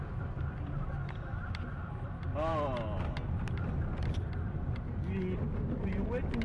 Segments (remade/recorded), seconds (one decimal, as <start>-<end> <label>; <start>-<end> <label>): 0.0-6.4 recorded